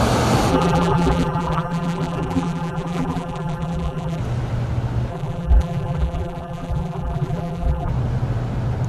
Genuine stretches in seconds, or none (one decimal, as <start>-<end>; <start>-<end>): 0.0-0.5; 4.2-5.1; 7.9-8.9